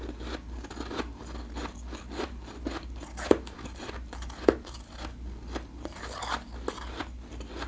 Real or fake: real